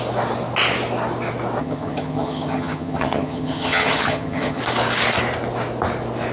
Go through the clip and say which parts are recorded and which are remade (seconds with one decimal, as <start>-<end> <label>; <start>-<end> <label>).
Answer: 0.0-1.6 recorded; 1.6-4.6 remade; 4.6-6.3 recorded